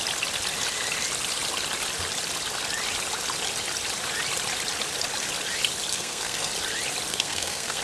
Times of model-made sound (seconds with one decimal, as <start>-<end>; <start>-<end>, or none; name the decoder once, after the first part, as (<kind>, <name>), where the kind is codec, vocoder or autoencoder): 5.9-6.5 (codec, SNAC); 7.1-7.8